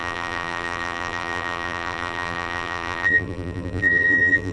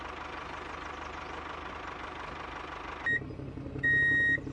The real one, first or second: second